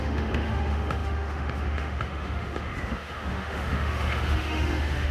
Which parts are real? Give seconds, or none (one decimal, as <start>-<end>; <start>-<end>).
none